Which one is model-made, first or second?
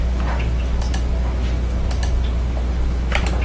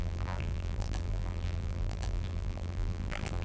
second